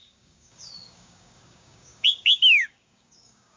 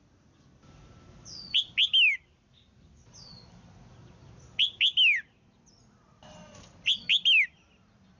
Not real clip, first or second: first